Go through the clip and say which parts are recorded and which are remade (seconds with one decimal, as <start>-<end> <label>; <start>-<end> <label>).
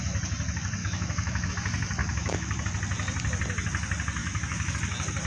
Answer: 0.0-0.8 recorded; 0.8-1.5 remade; 1.5-2.0 recorded; 2.0-2.6 remade; 2.6-4.2 recorded; 4.2-4.7 remade; 4.7-5.3 recorded